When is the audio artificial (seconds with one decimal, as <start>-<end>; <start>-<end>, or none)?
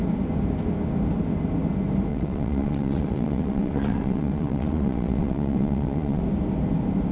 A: 2.1-6.2